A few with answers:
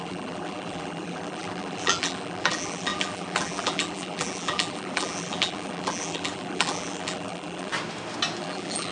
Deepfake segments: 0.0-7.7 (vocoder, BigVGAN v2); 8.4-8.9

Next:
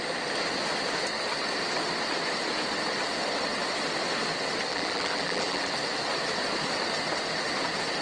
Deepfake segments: 4.7-5.7 (vocoder, BigVGAN v2)

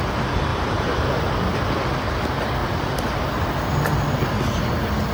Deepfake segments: 0.5-1.3 (vocoder, BigVGAN v2)

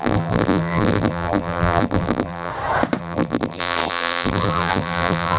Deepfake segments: 0.0-2.5 (vocoder, BigVGAN v2); 3.0-5.4

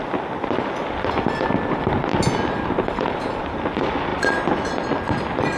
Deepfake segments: 0.0-2.1 (vocoder, BigVGAN v2); 3.4-5.6

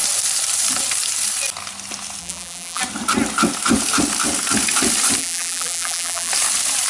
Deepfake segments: 2.2-2.8 (vocoder, BigVGAN v2); 5.2-6.3

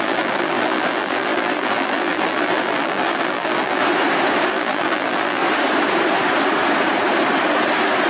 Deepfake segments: 0.0-3.8 (vocoder, BigVGAN v2); 4.5-5.4